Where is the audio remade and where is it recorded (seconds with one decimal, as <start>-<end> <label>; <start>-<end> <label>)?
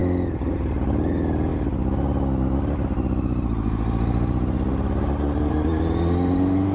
0.0-6.7 recorded